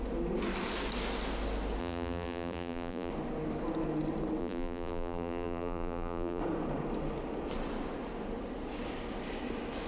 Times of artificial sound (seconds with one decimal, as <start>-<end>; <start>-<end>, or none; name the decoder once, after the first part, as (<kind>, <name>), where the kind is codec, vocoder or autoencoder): 1.8-3.1 (vocoder, BigVGAN v2); 4.4-6.4